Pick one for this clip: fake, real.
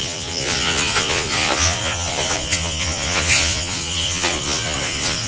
fake